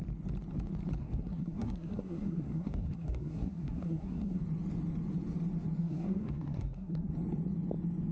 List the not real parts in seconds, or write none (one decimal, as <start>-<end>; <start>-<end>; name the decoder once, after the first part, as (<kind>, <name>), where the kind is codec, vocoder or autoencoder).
1.0-4.4 (codec, SNAC); 5.8-7.1